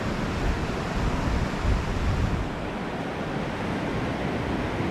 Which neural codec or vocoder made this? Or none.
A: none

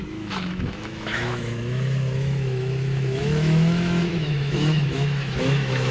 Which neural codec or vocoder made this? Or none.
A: autoencoder, DAC-VAE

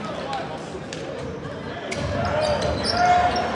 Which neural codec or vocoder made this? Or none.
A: none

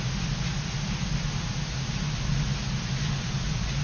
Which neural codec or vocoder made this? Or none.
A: none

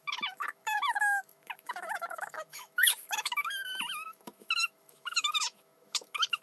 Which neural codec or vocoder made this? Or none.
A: autoencoder, DAC-VAE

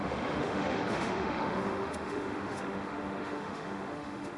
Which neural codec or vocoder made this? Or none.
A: autoencoder, DAC-VAE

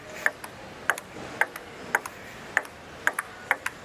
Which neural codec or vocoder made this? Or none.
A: none